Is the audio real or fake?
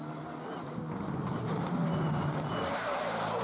real